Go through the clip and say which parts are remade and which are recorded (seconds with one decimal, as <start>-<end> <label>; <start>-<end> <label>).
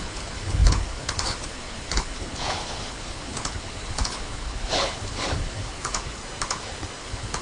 0.0-6.2 remade; 6.2-7.0 recorded; 7.0-7.4 remade